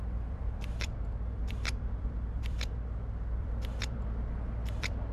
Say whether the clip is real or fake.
fake